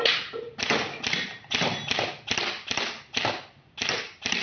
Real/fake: real